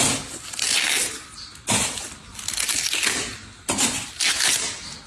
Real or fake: real